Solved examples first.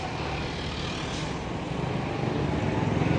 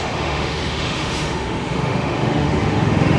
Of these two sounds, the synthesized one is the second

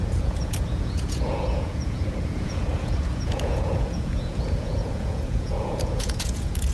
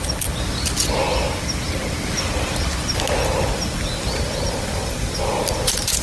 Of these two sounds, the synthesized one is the first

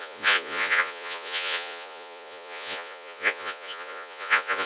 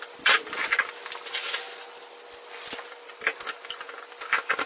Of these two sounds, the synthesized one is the first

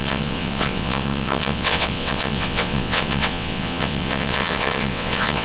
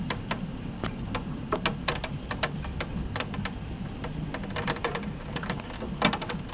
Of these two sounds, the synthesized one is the first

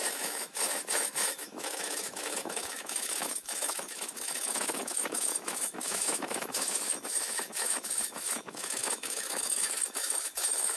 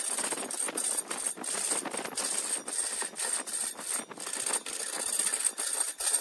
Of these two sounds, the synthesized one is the first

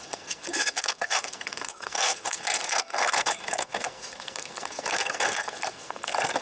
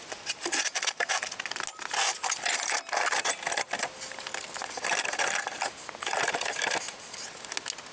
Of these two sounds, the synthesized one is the first